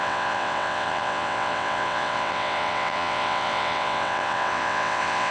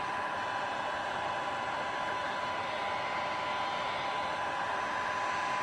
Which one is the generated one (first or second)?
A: first